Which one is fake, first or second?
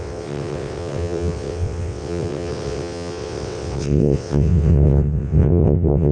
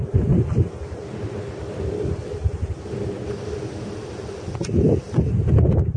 first